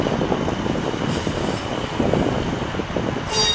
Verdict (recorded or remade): recorded